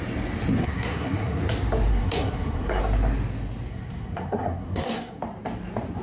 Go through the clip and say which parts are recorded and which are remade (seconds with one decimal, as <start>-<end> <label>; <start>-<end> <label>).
0.0-0.6 recorded; 0.6-1.4 remade; 1.4-1.9 recorded; 1.9-2.8 remade; 2.8-3.7 recorded; 3.7-5.2 remade; 5.2-6.0 recorded